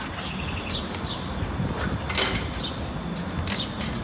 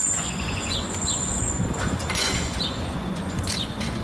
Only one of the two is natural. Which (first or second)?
first